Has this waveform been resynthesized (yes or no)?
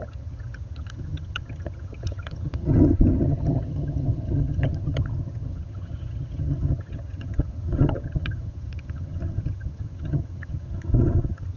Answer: yes